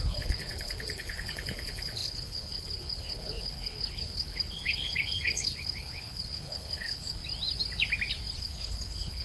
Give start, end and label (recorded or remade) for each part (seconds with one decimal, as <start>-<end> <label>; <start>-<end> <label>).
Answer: 0.0-7.2 remade; 7.2-8.4 recorded; 8.4-9.2 remade